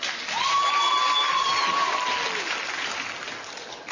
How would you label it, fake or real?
real